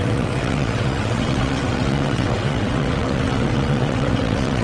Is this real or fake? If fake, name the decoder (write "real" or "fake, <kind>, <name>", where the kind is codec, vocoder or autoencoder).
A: fake, vocoder, WaveNeXt